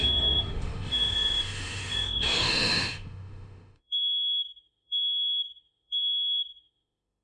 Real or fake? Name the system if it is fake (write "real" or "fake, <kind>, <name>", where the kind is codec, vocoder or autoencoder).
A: fake, autoencoder, DAC-VAE